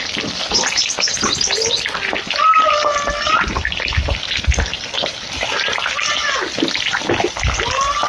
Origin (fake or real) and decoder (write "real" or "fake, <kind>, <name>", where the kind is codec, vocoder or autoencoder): real